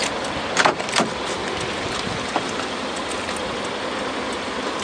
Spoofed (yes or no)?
no